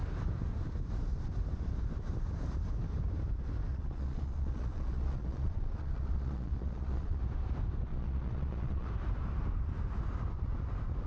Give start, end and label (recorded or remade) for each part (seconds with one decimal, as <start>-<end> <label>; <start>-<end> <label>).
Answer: 0.0-3.7 recorded; 3.7-7.2 remade; 7.2-7.9 recorded; 7.9-8.9 remade; 8.9-11.1 recorded